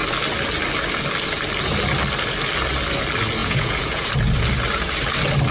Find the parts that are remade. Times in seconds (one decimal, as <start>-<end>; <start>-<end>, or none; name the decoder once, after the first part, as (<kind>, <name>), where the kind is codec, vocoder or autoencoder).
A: 3.4-4.1 (vocoder, Vocos)